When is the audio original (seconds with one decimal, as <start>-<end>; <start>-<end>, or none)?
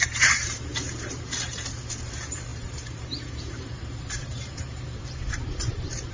none